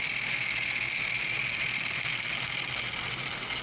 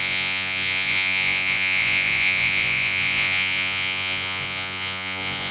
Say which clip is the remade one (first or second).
second